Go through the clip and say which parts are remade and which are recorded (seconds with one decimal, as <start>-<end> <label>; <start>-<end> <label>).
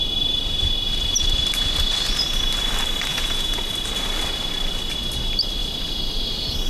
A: 0.0-3.1 recorded; 3.1-3.6 remade; 3.6-6.7 recorded